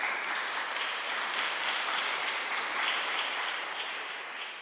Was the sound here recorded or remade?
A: remade